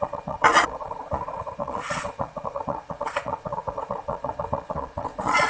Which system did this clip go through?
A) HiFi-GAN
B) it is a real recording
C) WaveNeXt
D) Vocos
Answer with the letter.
D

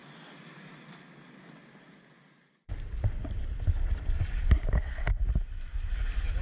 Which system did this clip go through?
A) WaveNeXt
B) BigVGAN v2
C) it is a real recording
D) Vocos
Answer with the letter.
C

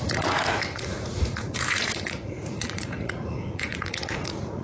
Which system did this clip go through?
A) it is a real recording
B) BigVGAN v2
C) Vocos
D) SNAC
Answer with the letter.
C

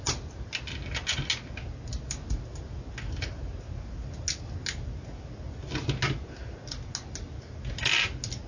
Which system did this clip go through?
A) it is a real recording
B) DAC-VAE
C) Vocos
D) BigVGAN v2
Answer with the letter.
A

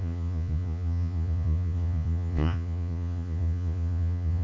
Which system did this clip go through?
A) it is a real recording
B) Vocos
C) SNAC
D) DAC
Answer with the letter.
B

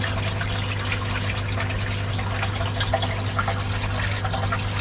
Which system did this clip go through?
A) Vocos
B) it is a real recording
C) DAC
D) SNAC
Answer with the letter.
B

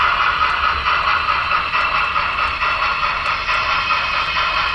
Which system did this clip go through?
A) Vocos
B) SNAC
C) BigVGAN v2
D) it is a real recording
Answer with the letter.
D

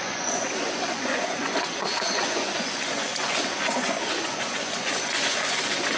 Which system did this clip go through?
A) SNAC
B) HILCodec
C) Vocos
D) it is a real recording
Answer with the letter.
C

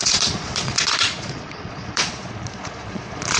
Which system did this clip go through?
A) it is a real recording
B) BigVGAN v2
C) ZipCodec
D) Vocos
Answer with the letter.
D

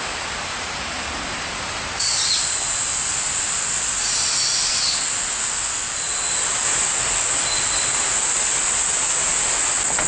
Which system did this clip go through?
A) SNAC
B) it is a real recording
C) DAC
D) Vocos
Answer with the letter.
B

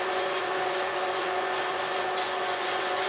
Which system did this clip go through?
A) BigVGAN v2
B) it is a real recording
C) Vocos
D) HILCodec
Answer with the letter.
C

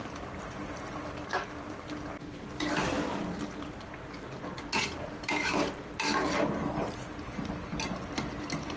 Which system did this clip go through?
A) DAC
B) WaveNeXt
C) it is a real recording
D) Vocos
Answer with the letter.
C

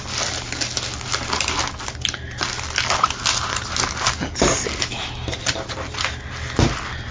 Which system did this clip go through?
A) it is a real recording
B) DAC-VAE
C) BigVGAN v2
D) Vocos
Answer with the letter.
A